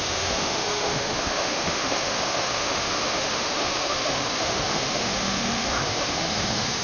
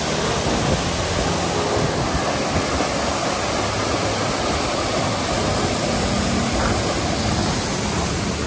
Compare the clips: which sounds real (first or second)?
second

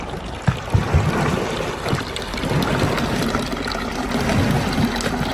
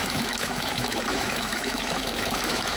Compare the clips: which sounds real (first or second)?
first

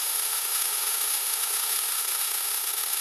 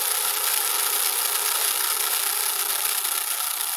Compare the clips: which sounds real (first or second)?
second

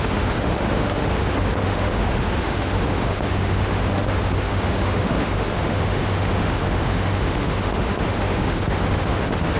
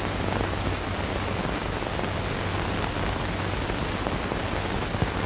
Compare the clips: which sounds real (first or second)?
second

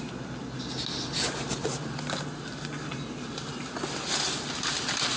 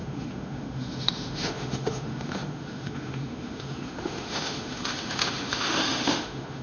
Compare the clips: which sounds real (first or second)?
first